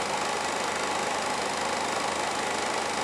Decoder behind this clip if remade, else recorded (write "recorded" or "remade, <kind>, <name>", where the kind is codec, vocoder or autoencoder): recorded